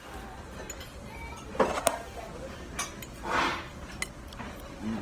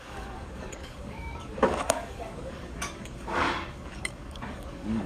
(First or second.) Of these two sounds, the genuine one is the first